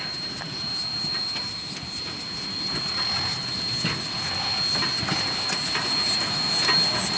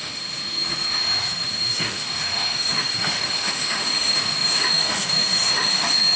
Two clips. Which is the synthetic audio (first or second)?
second